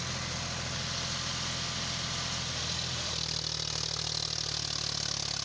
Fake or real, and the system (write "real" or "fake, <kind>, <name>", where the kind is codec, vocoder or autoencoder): real